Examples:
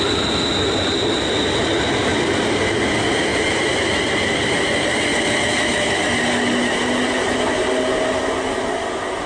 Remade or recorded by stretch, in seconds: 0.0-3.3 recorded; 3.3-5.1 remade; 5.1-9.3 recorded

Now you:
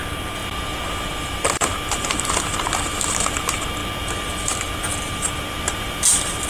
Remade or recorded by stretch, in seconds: 0.0-0.4 remade; 0.4-1.1 recorded; 1.1-3.8 remade; 3.8-4.4 recorded; 4.4-6.5 remade

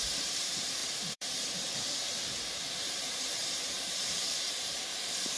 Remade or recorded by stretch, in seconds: 0.0-5.4 remade

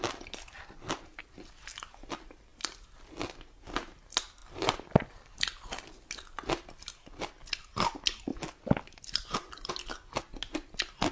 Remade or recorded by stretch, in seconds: 0.0-2.5 recorded; 2.5-3.1 remade; 3.1-4.4 recorded; 4.4-6.0 remade; 6.0-8.3 recorded; 8.3-9.7 remade; 9.7-11.1 recorded

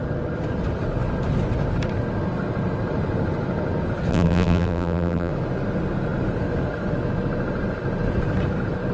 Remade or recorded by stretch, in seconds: 0.0-4.1 recorded; 4.1-5.3 remade; 5.3-8.9 recorded

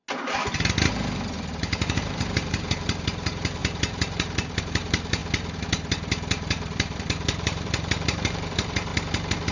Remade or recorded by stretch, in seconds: 0.0-0.9 recorded; 0.9-5.2 remade; 5.2-5.9 recorded; 5.9-8.9 remade; 8.9-9.5 recorded

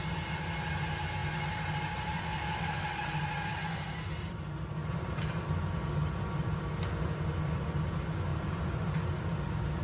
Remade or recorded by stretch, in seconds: 0.0-4.8 recorded; 4.8-5.3 remade; 5.3-8.3 recorded; 8.3-8.9 remade; 8.9-9.8 recorded

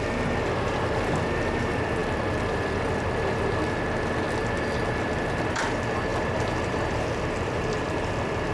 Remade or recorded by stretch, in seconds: 0.0-6.1 recorded; 6.1-8.1 remade; 8.1-8.5 recorded